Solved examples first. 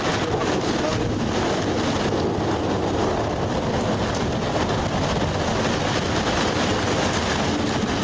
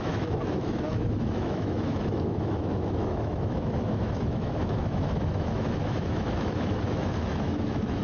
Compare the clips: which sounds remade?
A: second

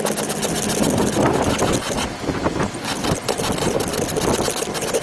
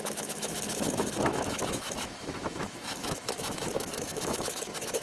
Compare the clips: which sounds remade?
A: second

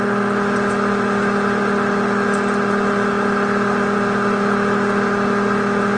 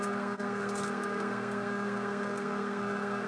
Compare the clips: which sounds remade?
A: second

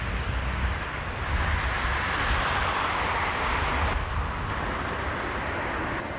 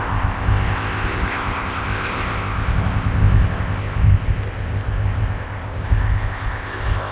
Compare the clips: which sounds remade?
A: second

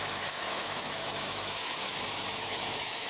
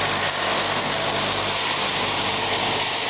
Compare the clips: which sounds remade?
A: first